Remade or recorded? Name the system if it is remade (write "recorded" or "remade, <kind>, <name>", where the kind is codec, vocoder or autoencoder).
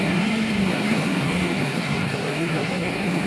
remade, codec, SNAC